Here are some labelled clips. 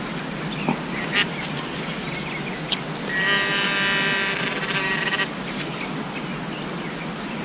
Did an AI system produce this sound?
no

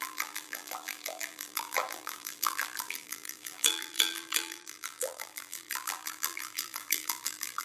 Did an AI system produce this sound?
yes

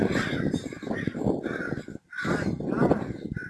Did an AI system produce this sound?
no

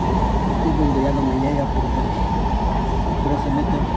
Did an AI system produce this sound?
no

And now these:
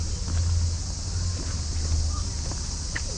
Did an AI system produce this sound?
no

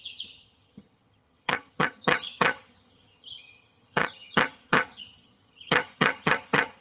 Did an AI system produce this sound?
yes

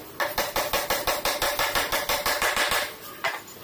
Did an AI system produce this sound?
no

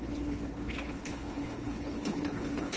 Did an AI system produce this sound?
yes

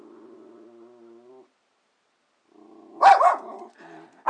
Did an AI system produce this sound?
no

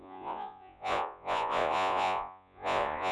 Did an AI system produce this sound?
yes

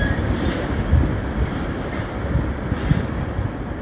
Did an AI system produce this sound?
no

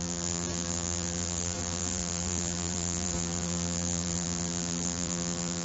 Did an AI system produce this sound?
yes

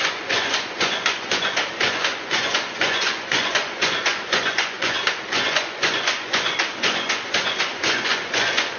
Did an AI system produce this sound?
yes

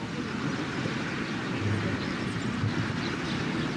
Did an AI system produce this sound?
no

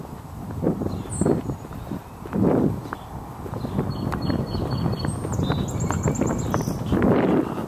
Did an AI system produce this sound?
no